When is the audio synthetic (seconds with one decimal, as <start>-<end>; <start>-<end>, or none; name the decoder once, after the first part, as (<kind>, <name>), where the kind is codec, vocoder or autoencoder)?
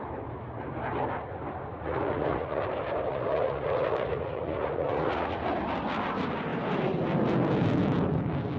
1.7-2.6 (vocoder, Vocos); 3.1-5.4